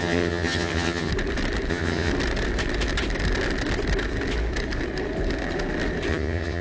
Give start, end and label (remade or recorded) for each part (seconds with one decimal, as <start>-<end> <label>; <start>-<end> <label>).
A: 0.0-1.1 remade; 1.1-1.7 recorded; 1.7-2.1 remade; 2.1-6.1 recorded; 6.1-6.6 remade